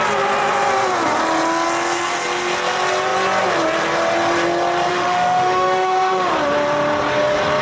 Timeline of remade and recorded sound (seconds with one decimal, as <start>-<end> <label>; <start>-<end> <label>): 0.0-4.9 recorded; 4.9-6.3 remade; 6.3-7.6 recorded